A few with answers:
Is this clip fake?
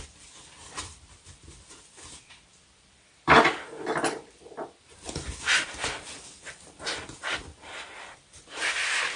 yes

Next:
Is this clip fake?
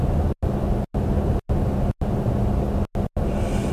no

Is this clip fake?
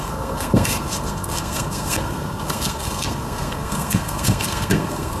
yes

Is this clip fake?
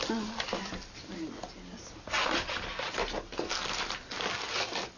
no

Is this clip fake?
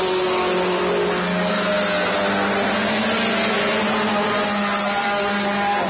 no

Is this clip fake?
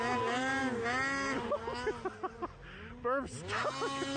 no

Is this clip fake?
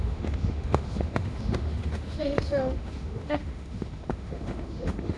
yes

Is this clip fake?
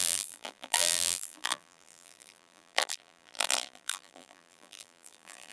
yes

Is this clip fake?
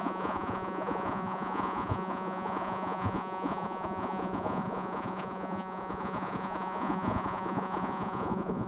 yes